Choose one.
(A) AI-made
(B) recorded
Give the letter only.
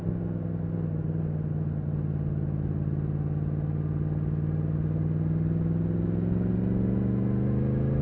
B